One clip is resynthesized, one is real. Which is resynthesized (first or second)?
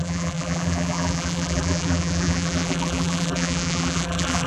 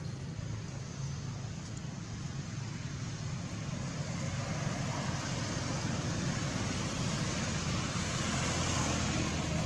first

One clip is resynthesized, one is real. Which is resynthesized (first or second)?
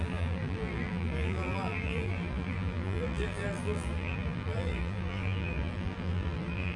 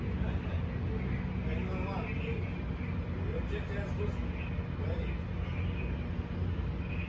first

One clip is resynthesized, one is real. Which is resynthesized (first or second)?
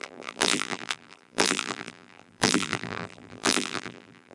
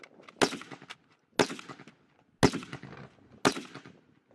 first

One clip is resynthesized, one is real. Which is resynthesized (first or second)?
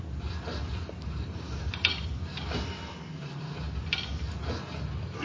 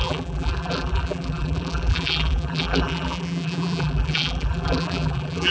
second